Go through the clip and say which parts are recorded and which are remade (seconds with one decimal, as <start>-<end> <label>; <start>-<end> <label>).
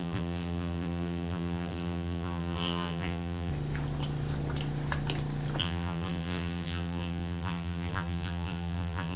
0.0-3.5 remade; 3.5-5.6 recorded; 5.6-9.2 remade